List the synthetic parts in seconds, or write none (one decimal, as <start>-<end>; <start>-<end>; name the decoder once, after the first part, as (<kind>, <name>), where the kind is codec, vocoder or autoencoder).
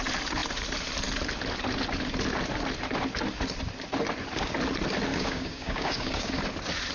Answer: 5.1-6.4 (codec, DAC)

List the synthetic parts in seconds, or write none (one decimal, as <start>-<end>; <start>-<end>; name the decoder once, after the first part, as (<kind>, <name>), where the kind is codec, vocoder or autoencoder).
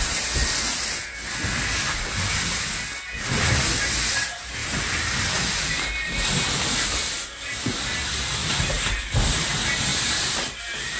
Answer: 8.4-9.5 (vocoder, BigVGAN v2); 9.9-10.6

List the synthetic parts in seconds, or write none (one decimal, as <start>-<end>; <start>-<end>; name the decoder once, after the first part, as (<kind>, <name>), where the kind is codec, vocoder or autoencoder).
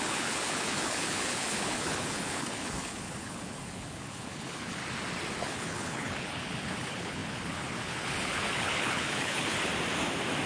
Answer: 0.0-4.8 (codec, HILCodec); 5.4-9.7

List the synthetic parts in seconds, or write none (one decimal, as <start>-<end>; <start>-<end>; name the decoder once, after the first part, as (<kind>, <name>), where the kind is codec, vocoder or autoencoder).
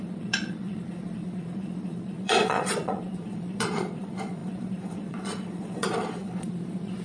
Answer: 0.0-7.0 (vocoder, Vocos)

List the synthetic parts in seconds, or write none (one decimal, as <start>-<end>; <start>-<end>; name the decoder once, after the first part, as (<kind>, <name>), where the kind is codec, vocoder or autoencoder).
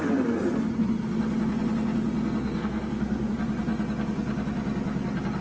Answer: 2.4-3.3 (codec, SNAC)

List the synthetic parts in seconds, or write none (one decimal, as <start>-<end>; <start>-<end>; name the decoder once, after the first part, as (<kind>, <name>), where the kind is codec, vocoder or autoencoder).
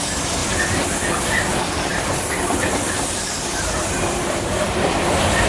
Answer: none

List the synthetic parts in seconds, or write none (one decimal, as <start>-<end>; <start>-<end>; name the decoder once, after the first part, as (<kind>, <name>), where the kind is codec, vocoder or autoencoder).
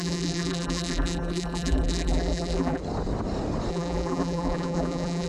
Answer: 0.0-2.8 (vocoder, BigVGAN v2); 3.7-5.3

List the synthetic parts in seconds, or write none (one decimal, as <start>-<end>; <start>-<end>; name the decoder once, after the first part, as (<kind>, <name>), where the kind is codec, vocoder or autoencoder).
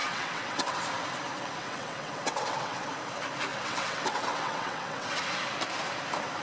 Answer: 0.0-0.8 (vocoder, WaveNeXt); 1.6-2.9; 3.5-5.2